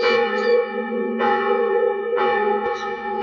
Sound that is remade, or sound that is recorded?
remade